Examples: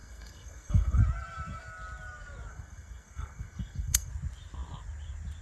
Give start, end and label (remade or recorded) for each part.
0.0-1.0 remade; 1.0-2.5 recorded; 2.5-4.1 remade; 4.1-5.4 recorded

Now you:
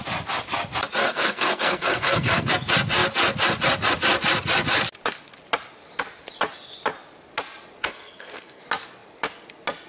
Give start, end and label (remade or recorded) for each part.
0.0-1.0 recorded; 1.0-2.5 remade; 2.5-7.8 recorded; 7.8-8.6 remade; 8.6-9.9 recorded

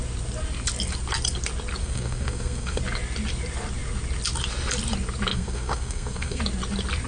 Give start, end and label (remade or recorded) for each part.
0.0-1.8 recorded; 1.8-2.8 remade; 2.8-5.3 recorded; 5.3-6.4 remade; 6.4-7.1 recorded

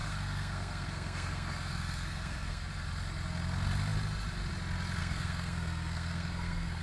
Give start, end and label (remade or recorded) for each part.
0.0-2.7 remade; 2.7-5.0 recorded; 5.0-6.8 remade